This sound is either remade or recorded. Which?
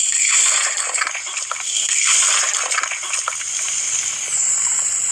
recorded